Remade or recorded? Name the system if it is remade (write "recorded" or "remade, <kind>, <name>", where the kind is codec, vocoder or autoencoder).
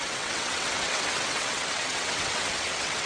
remade, vocoder, WaveNeXt